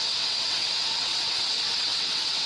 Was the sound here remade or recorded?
remade